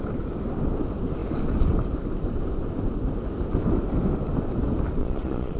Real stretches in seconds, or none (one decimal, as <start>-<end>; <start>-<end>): 0.0-5.0